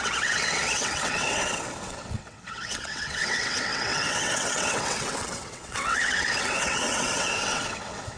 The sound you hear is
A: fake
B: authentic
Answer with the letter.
A